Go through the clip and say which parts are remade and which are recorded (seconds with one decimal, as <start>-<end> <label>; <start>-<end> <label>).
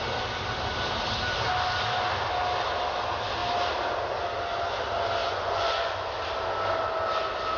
0.0-5.2 recorded; 5.2-6.1 remade; 6.1-7.6 recorded